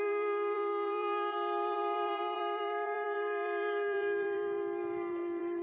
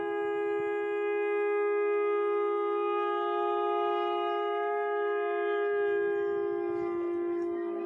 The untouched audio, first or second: second